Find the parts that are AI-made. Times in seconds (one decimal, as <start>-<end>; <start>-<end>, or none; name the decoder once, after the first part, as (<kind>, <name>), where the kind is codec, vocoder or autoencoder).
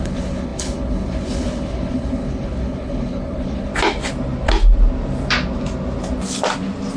0.0-3.7 (codec, HILCodec)